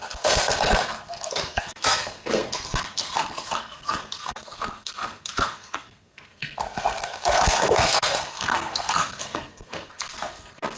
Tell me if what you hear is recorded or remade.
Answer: remade